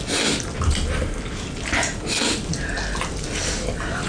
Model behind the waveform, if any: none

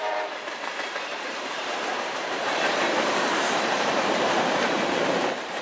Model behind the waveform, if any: vocoder, BigVGAN v2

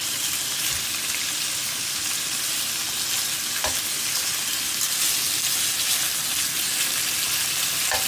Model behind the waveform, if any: none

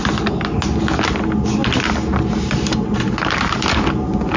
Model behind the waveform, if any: none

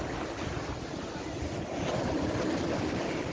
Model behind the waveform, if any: vocoder, BigVGAN v2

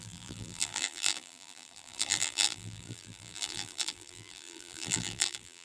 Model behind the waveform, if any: vocoder, BigVGAN v2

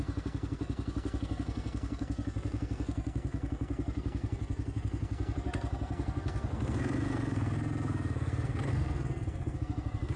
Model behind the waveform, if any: codec, SNAC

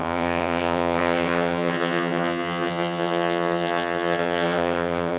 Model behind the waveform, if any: vocoder, HiFi-GAN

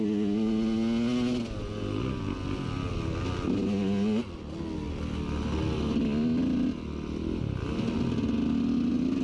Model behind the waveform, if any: none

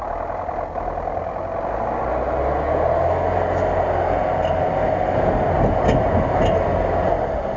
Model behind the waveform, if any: none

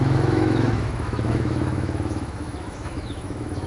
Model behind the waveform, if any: autoencoder, DAC-VAE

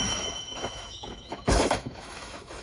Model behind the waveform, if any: autoencoder, DAC-VAE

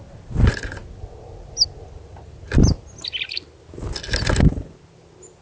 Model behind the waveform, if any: none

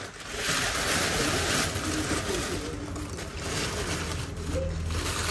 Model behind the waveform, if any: none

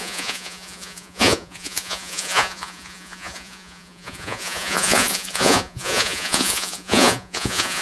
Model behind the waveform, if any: vocoder, Vocos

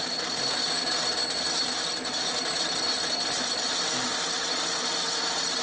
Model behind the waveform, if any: none